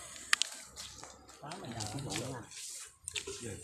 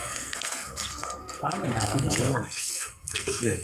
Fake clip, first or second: second